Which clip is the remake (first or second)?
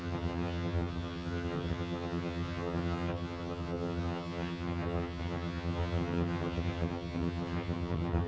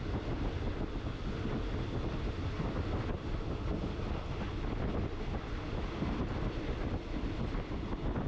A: first